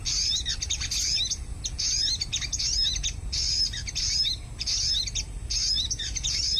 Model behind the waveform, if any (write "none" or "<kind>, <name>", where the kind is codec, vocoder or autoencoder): none